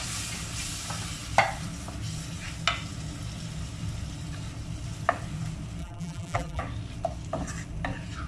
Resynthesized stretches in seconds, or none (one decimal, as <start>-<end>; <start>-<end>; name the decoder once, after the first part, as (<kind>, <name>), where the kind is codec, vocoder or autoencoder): 5.8-6.6 (vocoder, BigVGAN v2)